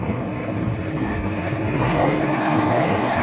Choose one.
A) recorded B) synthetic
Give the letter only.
B